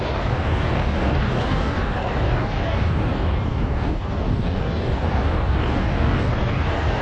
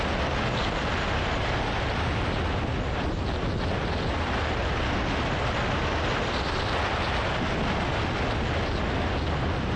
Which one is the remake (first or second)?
first